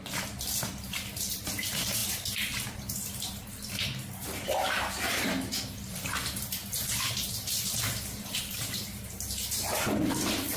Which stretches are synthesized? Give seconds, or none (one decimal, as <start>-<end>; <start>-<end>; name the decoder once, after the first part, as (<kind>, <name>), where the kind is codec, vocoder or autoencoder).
0.0-10.6 (vocoder, BigVGAN v2)